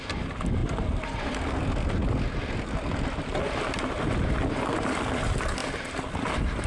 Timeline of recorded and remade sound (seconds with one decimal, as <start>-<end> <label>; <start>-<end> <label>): 0.0-6.7 recorded